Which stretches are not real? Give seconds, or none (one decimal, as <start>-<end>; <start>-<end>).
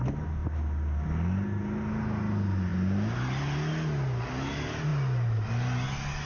none